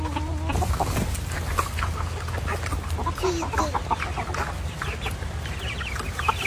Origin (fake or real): real